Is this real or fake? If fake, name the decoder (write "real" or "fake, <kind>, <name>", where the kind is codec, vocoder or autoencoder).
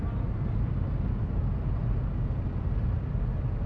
real